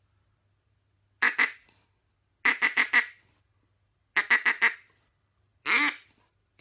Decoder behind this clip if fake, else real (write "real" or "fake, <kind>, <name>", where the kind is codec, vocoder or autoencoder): real